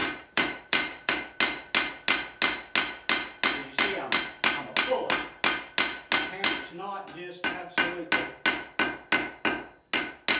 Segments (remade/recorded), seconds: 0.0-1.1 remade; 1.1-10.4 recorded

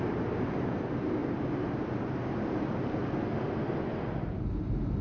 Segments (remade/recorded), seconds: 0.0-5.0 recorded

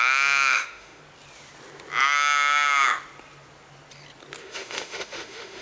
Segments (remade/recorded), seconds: 0.0-1.0 remade; 1.0-4.4 recorded; 4.4-5.6 remade

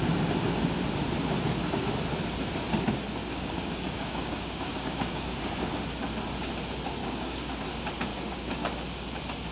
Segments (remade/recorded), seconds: 0.0-3.2 recorded; 3.2-5.7 remade; 5.7-7.0 recorded; 7.0-7.6 remade; 7.6-8.1 recorded; 8.1-8.7 remade; 8.7-9.5 recorded

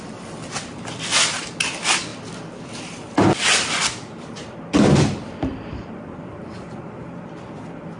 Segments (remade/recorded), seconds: 0.0-8.0 remade

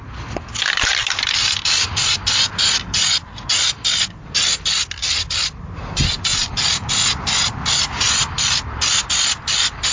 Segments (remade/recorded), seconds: 0.0-9.9 recorded